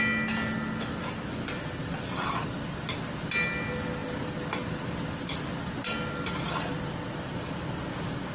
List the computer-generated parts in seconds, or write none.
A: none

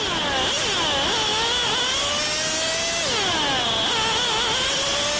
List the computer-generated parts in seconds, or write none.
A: none

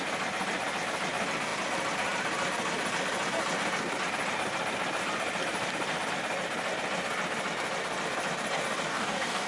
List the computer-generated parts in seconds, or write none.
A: 8.9-9.5 (codec, DAC)